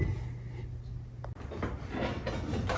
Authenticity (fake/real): real